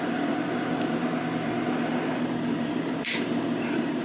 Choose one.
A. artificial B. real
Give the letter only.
A